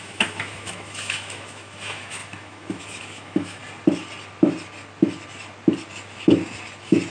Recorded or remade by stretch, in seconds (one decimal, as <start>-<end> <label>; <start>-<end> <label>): 0.0-3.6 remade; 3.6-7.1 recorded